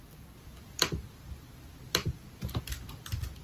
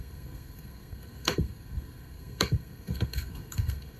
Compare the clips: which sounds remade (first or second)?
second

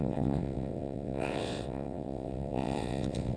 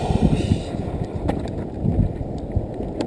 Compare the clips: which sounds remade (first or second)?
first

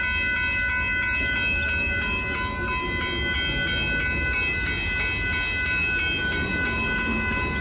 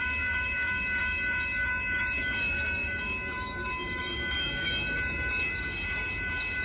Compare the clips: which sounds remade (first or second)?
second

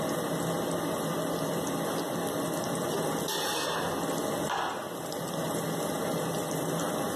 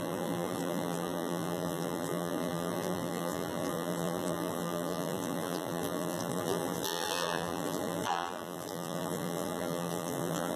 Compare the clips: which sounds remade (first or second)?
second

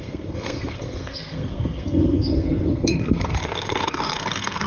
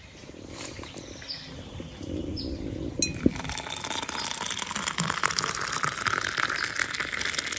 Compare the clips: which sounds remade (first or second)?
first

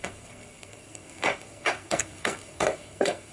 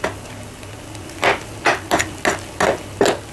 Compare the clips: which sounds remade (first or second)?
first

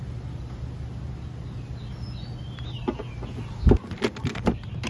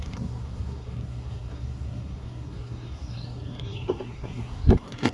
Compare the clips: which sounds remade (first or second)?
second